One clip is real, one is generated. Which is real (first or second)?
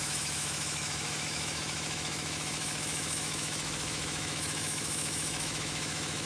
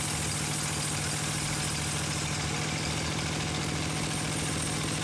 second